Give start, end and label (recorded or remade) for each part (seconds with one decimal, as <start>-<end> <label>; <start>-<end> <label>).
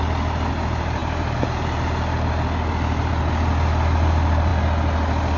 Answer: 0.0-5.4 recorded